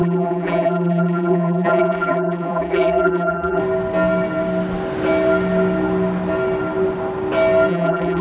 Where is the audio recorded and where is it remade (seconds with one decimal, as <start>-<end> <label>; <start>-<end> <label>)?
0.0-3.6 remade; 3.6-7.7 recorded; 7.7-8.2 remade